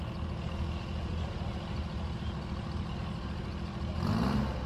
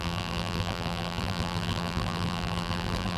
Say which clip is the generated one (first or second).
second